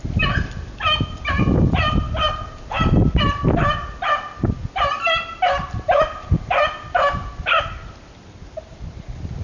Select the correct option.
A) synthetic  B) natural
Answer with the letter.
B